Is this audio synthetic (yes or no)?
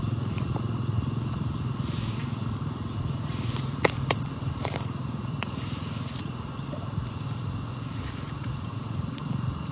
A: yes